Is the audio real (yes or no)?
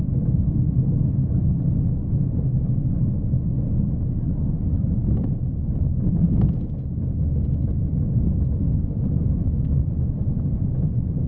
yes